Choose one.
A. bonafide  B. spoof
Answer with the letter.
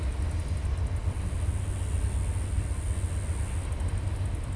A